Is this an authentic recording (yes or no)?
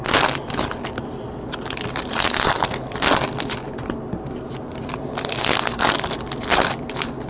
yes